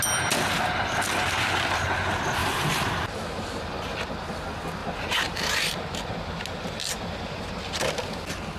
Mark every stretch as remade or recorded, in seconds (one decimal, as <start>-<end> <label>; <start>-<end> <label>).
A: 0.0-2.4 recorded; 2.4-3.1 remade; 3.1-4.8 recorded; 4.8-6.0 remade; 6.0-8.6 recorded